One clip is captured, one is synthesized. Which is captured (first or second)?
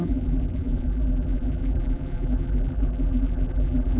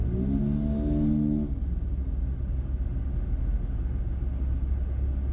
second